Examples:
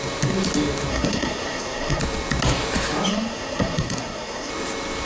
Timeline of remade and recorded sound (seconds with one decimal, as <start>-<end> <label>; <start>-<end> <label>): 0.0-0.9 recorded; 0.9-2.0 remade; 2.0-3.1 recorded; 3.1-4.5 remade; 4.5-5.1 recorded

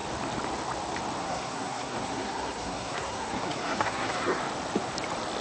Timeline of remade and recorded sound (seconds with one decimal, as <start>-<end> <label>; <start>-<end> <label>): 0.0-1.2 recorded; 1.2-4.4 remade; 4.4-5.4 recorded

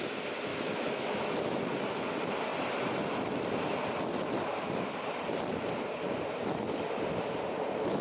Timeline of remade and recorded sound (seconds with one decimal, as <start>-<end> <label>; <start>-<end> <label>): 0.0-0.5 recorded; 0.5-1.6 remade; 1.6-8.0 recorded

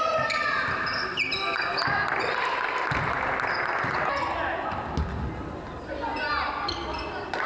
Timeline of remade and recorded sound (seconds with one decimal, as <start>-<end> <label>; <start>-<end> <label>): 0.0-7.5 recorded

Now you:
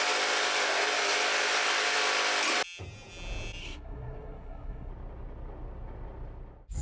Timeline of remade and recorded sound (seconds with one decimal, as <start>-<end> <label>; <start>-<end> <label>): 0.0-3.6 recorded; 3.6-4.9 remade; 4.9-6.8 recorded

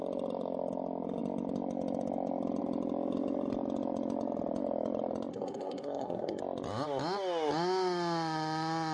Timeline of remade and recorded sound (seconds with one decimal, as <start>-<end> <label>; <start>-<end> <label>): 0.0-5.3 recorded; 5.3-6.4 remade; 6.4-8.9 recorded